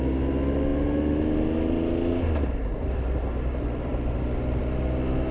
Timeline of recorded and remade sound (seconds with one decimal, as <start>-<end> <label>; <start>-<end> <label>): 0.0-5.3 recorded